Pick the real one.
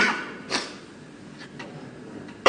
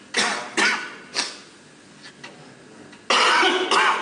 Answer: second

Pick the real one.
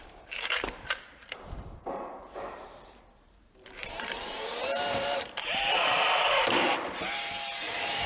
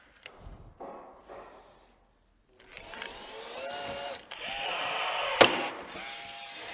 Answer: second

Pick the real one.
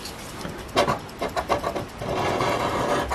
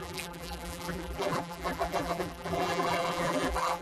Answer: first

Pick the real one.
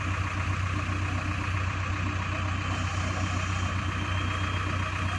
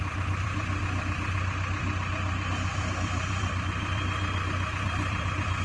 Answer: first